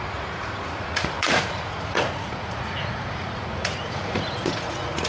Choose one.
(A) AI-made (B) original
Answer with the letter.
A